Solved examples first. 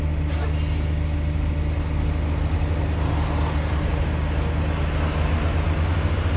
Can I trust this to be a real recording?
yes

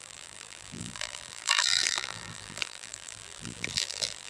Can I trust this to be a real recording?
no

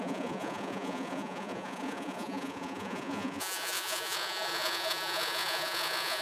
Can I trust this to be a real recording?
no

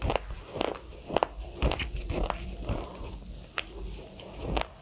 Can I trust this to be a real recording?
yes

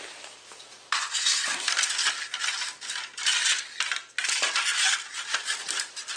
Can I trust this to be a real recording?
yes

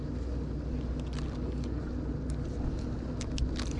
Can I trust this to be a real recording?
yes